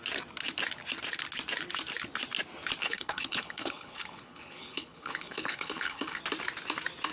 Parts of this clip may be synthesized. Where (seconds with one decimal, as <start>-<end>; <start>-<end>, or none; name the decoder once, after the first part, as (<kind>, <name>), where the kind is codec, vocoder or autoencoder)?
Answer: 2.8-6.2 (codec, HILCodec)